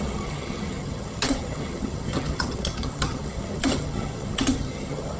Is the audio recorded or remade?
remade